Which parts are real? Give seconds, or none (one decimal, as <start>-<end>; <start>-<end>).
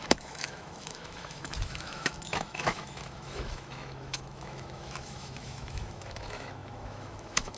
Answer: none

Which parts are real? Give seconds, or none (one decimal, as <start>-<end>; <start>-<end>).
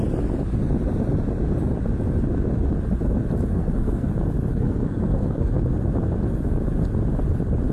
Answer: 0.0-3.5; 4.1-4.5; 5.5-7.7